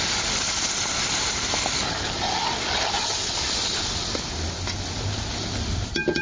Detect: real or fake real